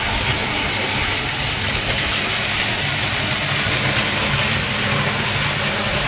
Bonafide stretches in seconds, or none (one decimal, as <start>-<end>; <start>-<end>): 0.0-6.1